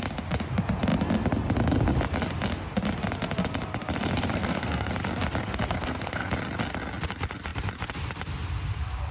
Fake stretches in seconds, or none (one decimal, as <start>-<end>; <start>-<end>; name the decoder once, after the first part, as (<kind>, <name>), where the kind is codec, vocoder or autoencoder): 4.3-4.9 (codec, SNAC); 5.4-6.3